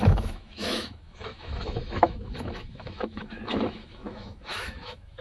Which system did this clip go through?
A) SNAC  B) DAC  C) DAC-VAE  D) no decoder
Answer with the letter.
C